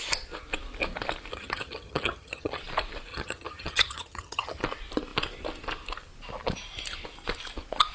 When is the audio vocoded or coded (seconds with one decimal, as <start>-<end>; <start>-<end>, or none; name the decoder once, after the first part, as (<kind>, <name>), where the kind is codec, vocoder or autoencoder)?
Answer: 1.3-2.6 (vocoder, HiFi-GAN); 3.1-4.6